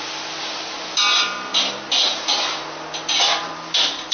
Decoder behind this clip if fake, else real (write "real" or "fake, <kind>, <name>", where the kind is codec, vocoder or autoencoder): real